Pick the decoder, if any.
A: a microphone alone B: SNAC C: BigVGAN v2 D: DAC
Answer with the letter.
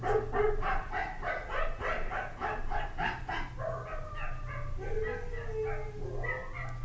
A